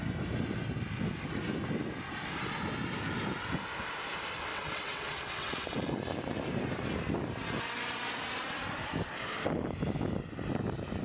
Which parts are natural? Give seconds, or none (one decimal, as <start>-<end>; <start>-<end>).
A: 0.0-4.5; 5.9-11.0